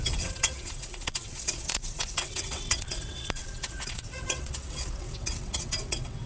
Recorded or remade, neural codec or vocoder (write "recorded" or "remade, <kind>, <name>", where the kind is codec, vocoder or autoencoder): remade, vocoder, WaveNeXt